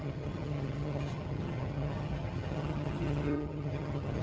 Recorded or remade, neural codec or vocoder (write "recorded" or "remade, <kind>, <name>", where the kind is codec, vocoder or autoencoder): remade, vocoder, HiFi-GAN